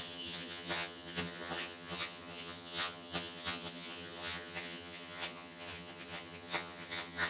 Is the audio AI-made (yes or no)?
yes